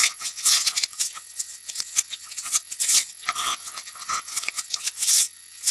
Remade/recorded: remade